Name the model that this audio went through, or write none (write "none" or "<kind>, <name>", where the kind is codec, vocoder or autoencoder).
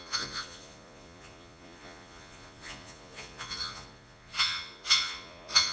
vocoder, Vocos